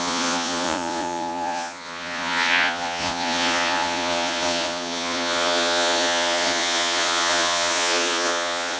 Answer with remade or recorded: remade